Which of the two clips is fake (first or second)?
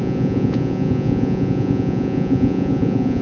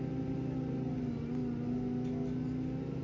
first